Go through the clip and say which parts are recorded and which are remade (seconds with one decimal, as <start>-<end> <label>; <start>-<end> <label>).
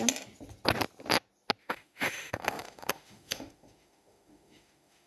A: 0.0-1.6 recorded; 1.6-5.1 remade